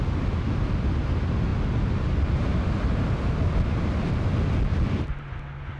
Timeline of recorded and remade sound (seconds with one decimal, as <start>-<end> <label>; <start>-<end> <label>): 0.0-5.8 recorded